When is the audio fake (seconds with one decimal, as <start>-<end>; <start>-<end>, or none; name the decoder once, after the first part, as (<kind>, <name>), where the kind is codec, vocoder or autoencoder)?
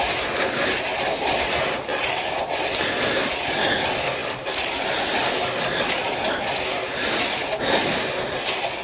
1.9-2.4 (vocoder, BigVGAN v2); 4.2-5.8